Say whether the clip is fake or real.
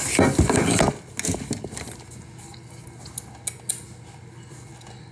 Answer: real